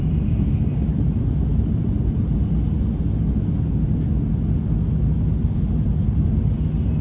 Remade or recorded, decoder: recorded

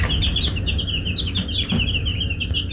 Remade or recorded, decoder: recorded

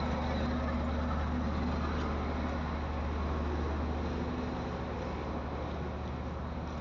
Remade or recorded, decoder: recorded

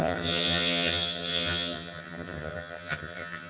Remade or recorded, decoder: remade, vocoder, HiFi-GAN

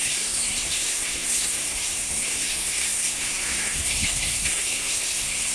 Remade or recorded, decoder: remade, codec, SNAC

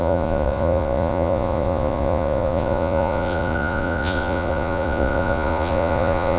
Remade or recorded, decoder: remade, vocoder, Vocos